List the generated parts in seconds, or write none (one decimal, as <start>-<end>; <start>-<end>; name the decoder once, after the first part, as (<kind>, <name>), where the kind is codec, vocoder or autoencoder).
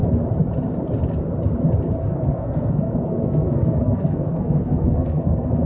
2.0-5.7 (codec, SNAC)